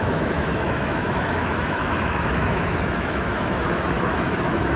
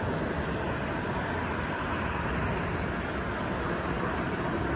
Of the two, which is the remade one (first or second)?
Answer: first